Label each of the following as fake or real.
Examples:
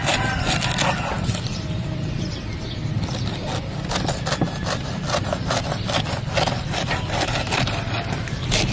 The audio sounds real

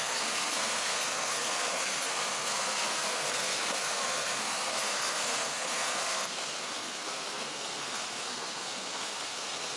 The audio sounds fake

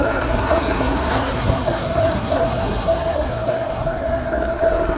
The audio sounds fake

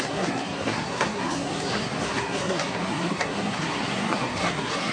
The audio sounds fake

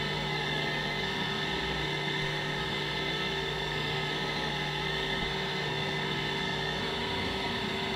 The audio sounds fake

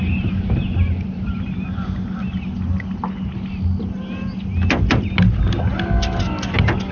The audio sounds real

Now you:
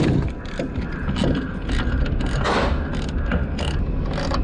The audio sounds real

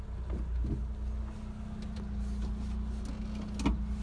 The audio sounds real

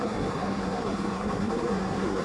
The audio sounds fake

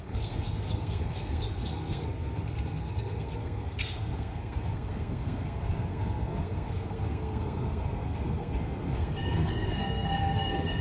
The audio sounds fake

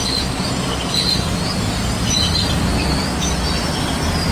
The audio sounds real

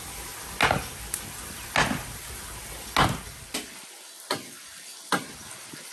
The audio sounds real